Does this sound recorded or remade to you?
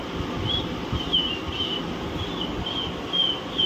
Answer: recorded